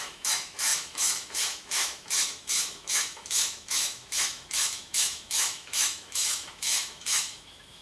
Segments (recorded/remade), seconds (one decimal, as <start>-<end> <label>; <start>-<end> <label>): 0.0-7.8 remade